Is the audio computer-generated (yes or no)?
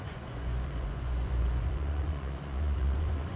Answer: yes